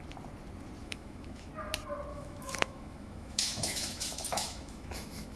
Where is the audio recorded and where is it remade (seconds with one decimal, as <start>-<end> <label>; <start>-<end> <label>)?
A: 0.0-0.8 recorded; 0.8-1.5 remade; 1.5-2.1 recorded; 2.1-5.4 remade